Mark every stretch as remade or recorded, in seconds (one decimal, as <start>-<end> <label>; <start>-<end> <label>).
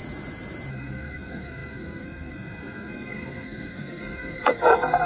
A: 0.0-0.7 recorded; 0.7-5.1 remade